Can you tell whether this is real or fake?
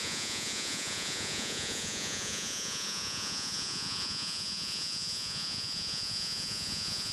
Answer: fake